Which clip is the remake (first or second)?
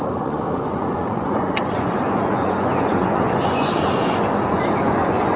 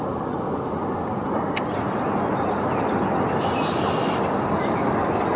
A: first